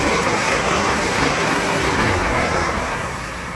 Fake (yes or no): yes